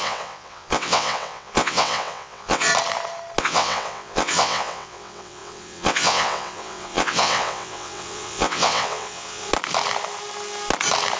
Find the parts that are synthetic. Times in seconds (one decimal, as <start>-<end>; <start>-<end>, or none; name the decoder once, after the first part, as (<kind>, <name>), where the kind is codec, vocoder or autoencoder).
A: 0.0-2.7 (vocoder, WaveNeXt); 3.4-9.5